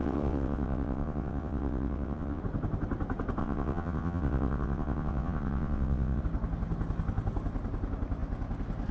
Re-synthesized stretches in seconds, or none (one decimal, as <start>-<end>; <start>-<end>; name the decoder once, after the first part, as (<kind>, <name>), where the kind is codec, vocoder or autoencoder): 0.0-2.4 (vocoder, WaveNeXt); 3.4-6.2